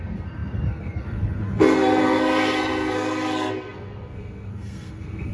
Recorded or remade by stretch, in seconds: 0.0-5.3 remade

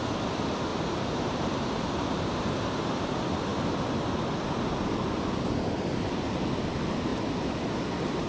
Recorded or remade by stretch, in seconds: 0.0-0.7 recorded; 0.7-3.0 remade; 3.0-7.1 recorded; 7.1-8.3 remade

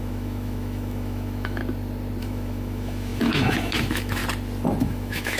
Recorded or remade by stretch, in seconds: 0.0-1.6 remade; 1.6-2.2 recorded; 2.2-4.2 remade; 4.2-4.8 recorded; 4.8-5.4 remade

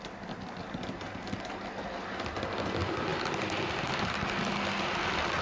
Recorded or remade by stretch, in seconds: 0.0-5.4 recorded